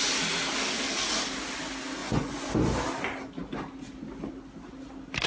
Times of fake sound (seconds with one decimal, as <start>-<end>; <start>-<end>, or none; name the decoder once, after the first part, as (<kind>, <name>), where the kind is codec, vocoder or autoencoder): 2.0-2.5 (vocoder, Vocos)